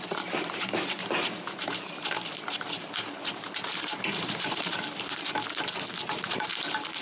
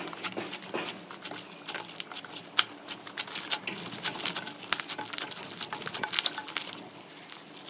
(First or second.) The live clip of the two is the second